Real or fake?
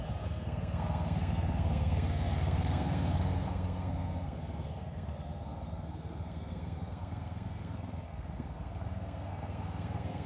fake